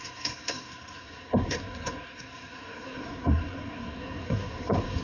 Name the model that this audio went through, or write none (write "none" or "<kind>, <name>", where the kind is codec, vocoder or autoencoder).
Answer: codec, SNAC